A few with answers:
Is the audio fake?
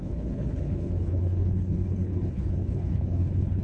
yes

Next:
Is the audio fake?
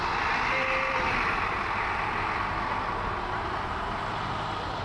no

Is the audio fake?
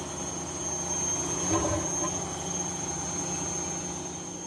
no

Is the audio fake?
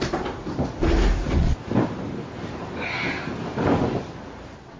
no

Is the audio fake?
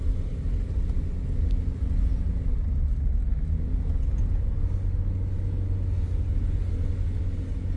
no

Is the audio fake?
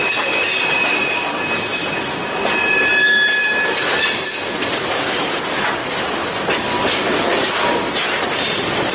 no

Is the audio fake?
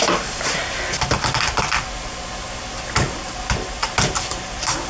no